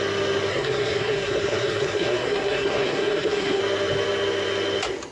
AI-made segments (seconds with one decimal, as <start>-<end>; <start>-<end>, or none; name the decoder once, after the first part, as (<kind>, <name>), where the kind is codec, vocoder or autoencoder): 0.5-3.6 (codec, SNAC)